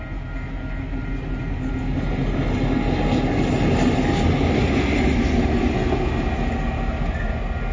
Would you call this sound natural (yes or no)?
yes